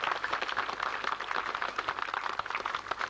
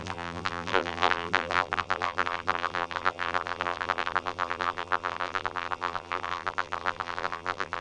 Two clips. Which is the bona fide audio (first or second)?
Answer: first